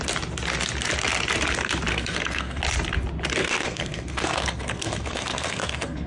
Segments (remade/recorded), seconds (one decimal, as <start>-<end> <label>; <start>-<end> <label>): 0.0-1.9 recorded; 1.9-2.6 remade; 2.6-3.4 recorded; 3.4-6.1 remade